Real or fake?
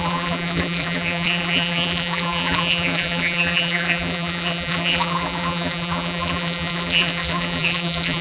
fake